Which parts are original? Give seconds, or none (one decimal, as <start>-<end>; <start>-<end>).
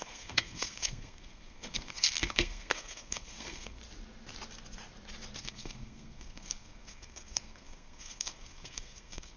3.8-5.4